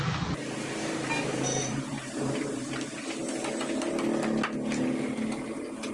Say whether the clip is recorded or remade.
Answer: recorded